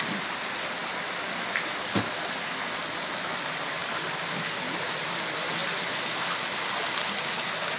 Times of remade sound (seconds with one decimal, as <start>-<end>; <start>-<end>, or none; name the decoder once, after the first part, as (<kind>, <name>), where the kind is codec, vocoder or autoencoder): none